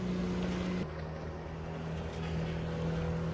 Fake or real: real